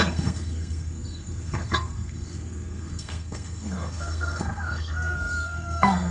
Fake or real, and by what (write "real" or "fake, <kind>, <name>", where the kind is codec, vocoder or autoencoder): fake, codec, SNAC